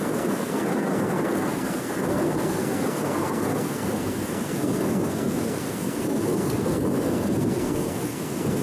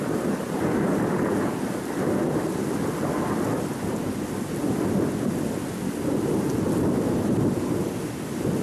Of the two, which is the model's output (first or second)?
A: first